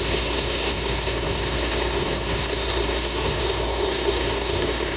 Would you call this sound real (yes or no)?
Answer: no